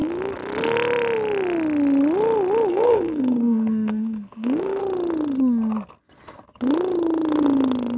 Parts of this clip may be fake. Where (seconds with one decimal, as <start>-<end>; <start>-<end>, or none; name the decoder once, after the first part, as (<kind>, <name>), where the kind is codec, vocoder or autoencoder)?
2.7-4.8 (codec, SNAC)